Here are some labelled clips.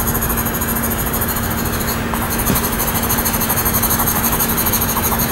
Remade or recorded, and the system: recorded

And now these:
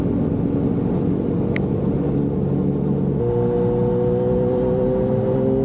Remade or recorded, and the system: recorded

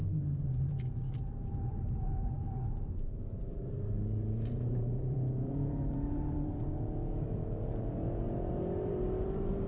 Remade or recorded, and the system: remade, vocoder, BigVGAN v2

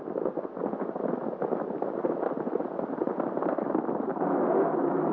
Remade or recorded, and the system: recorded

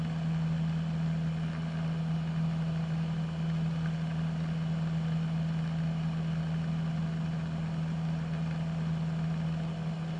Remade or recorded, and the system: recorded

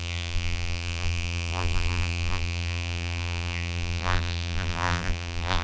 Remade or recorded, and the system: remade, vocoder, BigVGAN v2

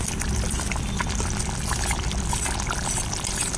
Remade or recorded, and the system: remade, vocoder, BigVGAN v2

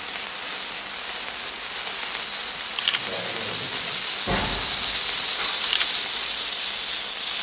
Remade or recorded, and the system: recorded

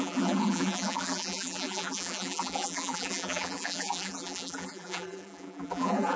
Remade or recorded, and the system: remade, vocoder, BigVGAN v2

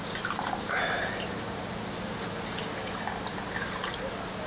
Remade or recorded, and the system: remade, vocoder, BigVGAN v2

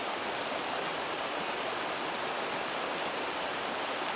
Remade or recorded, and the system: recorded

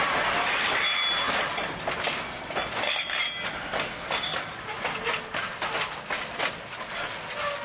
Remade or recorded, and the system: recorded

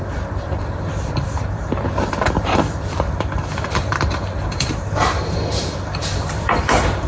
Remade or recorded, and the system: remade, vocoder, BigVGAN v2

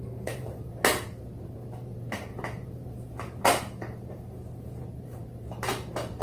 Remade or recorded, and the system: remade, vocoder, BigVGAN v2